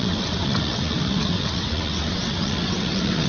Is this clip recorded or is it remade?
remade